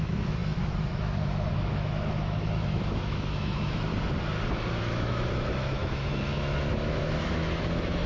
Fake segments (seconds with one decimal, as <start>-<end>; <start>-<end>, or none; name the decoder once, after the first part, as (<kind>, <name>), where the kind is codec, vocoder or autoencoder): 0.0-3.9 (autoencoder, DAC-VAE); 4.8-8.1